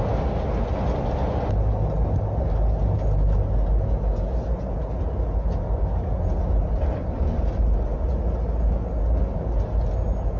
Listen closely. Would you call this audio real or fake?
real